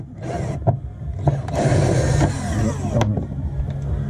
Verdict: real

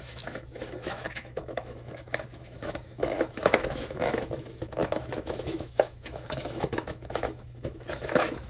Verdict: fake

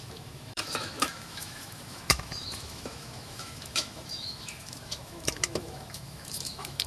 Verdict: fake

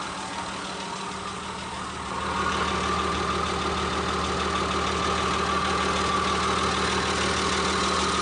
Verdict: real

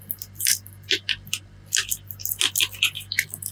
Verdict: real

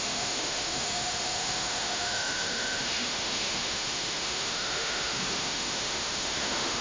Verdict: fake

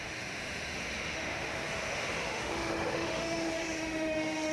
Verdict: fake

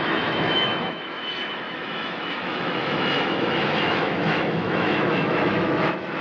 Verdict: fake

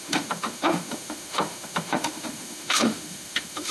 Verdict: fake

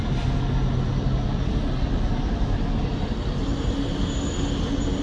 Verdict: real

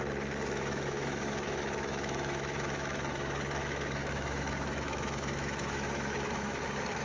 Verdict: fake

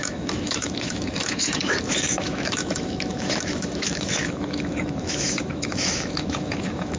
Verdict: fake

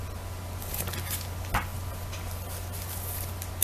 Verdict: real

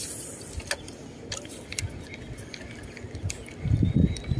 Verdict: real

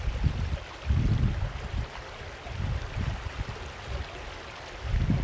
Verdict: real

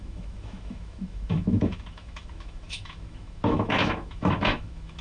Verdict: fake